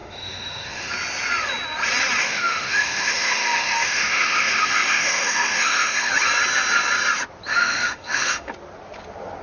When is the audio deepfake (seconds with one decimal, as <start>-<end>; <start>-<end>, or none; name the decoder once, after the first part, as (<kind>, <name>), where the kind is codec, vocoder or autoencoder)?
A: 0.0-0.9 (autoencoder, DAC-VAE); 2.2-6.1; 7.5-8.5